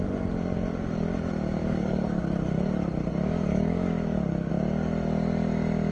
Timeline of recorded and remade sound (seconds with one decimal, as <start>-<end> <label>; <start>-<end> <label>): 0.0-1.6 recorded; 1.6-2.2 remade; 2.2-3.1 recorded; 3.1-4.5 remade; 4.5-5.9 recorded